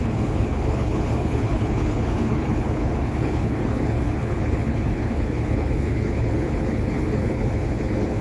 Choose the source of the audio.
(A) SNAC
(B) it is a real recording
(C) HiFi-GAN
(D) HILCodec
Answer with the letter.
D